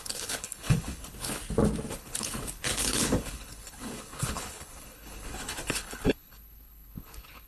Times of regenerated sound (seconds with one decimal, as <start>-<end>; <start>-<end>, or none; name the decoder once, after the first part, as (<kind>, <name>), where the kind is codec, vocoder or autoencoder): 0.0-1.4 (codec, HILCodec); 1.9-7.5

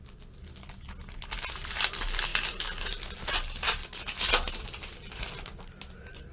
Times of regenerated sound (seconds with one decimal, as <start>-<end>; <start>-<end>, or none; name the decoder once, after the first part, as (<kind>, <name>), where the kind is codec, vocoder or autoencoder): none